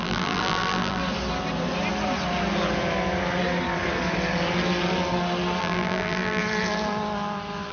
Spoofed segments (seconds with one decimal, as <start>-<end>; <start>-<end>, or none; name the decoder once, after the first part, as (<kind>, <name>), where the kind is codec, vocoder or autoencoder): 0.0-1.0 (vocoder, BigVGAN v2); 5.6-6.4